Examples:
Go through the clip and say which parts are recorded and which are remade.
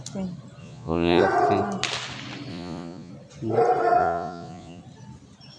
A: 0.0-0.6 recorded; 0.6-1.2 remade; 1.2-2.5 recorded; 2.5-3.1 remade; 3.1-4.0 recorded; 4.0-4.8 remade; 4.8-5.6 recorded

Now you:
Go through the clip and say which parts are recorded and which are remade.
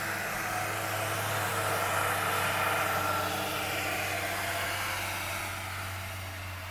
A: 0.0-6.7 recorded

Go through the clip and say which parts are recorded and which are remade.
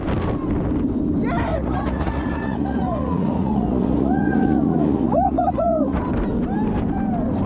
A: 0.0-1.5 recorded; 1.5-6.0 remade; 6.0-7.5 recorded